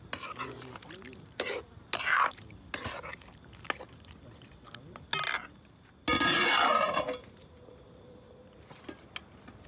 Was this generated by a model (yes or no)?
no